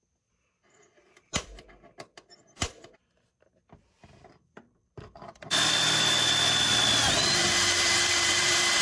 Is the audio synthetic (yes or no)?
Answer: yes